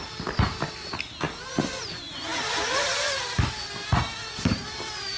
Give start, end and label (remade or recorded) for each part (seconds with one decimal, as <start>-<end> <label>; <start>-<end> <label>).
0.0-5.2 recorded